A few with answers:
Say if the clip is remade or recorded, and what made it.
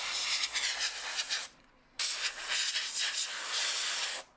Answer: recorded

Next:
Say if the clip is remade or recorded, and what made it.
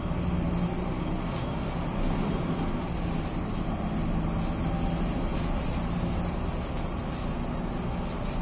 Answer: recorded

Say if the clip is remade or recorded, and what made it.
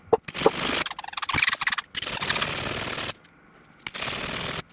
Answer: recorded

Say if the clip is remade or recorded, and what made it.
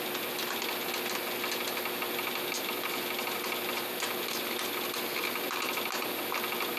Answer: recorded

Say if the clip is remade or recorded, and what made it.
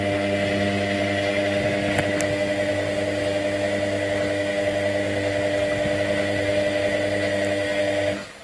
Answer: recorded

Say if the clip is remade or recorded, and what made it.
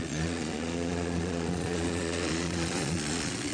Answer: remade, vocoder, Vocos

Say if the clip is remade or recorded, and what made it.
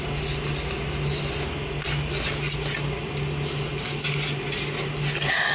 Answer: recorded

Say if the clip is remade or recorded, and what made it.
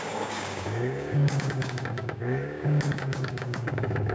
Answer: remade, codec, DAC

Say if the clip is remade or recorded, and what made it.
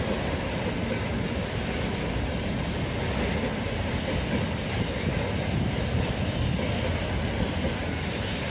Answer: recorded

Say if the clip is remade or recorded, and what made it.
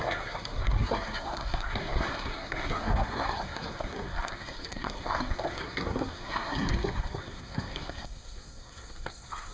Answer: remade, codec, SNAC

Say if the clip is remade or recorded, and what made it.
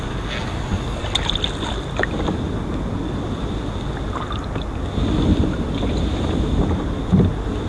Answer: recorded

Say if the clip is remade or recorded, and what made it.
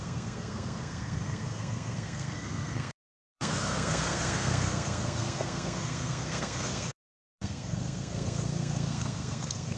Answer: remade, codec, SNAC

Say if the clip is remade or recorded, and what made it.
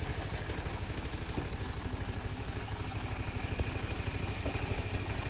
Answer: recorded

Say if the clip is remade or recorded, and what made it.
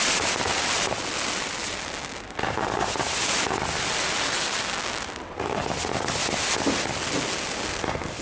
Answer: recorded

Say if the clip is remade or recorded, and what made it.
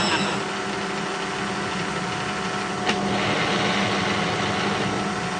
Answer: recorded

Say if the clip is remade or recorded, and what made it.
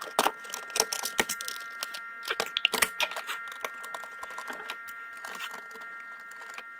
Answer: recorded